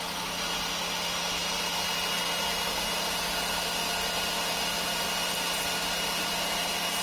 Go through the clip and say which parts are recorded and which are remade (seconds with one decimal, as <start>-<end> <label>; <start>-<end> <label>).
0.0-7.0 recorded